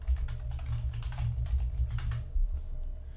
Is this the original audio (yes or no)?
yes